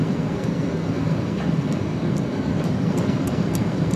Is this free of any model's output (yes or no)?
no